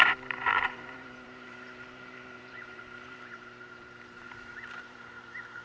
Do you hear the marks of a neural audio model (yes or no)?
yes